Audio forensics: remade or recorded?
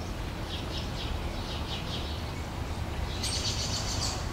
recorded